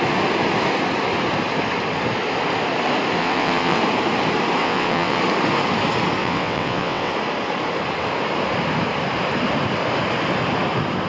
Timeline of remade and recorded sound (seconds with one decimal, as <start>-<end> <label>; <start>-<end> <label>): 0.0-3.2 recorded; 3.2-3.8 remade; 3.8-4.6 recorded; 4.6-5.2 remade; 5.2-6.2 recorded; 6.2-7.1 remade; 7.1-11.1 recorded